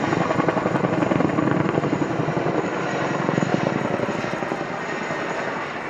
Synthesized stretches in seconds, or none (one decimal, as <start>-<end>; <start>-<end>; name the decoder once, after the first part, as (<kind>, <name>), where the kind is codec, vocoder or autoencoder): 3.5-4.1 (vocoder, BigVGAN v2)